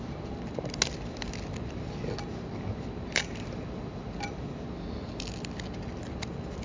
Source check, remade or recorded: recorded